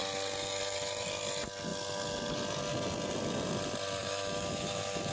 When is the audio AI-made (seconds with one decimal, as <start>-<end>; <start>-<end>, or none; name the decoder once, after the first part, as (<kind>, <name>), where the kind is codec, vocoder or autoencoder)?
4.0-5.1 (autoencoder, DAC-VAE)